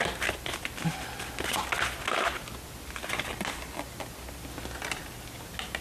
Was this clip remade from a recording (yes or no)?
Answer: no